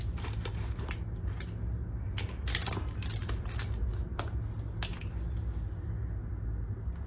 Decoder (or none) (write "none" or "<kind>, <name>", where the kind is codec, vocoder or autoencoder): none